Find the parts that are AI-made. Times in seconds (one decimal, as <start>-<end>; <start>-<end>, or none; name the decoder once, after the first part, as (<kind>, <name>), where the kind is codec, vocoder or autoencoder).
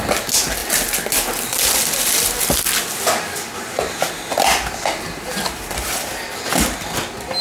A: none